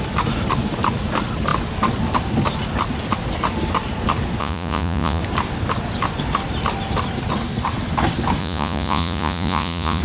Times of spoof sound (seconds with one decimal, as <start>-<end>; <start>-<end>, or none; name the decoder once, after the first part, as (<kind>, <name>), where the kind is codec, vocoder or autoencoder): 4.4-5.2 (vocoder, Vocos); 8.4-10.0